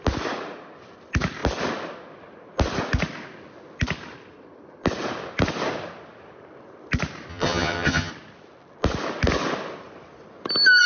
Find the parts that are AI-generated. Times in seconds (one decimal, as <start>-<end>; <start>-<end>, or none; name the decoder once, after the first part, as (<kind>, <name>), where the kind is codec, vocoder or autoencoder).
7.3-8.1 (vocoder, HiFi-GAN)